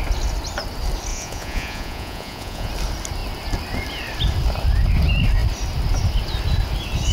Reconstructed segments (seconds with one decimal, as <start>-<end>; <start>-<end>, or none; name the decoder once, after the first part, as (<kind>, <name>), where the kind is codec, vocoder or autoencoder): 1.1-2.7 (vocoder, Vocos)